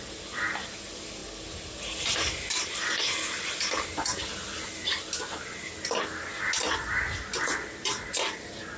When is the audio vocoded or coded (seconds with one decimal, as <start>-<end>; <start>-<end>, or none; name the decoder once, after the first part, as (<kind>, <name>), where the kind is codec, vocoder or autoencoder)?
none